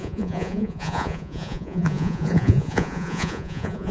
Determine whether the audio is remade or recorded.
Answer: remade